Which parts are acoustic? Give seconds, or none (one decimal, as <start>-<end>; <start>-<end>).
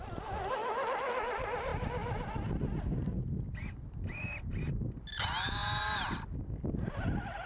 0.0-7.5